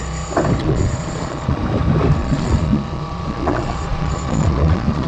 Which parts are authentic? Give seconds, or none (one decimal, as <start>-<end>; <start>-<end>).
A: 0.0-0.6; 1.6-2.2